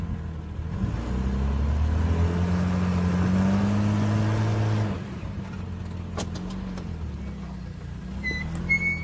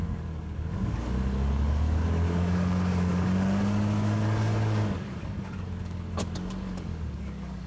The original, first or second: first